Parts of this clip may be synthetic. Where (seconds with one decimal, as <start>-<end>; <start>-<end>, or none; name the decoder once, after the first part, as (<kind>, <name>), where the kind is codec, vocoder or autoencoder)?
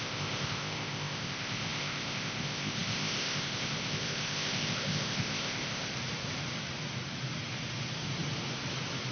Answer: 0.0-5.9 (codec, ZipCodec)